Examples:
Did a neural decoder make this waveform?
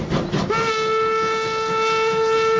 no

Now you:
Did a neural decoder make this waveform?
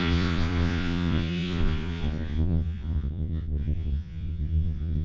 yes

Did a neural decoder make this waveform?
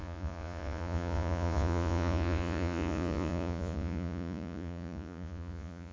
yes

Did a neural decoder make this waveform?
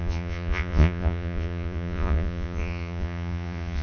yes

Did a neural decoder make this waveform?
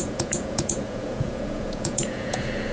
yes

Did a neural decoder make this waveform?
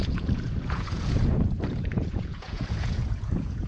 yes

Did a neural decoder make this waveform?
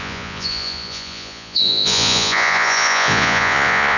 yes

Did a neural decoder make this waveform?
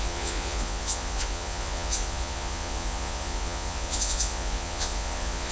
yes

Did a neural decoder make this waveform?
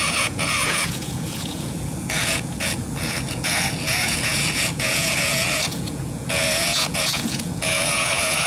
yes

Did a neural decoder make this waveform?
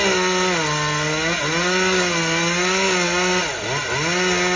no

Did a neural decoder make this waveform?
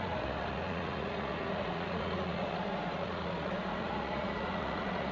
yes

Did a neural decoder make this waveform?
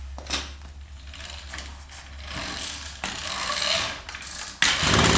no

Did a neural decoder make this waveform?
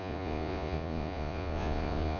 yes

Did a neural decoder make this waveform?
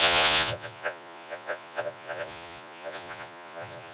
yes